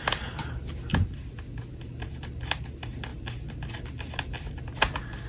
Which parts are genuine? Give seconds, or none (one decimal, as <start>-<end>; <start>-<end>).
0.7-5.3